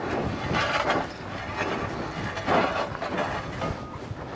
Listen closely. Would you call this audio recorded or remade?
recorded